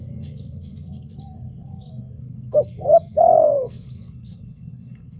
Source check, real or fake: fake